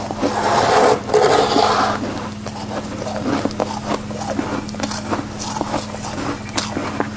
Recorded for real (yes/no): yes